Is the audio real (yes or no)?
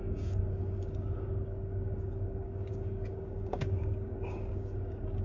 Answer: no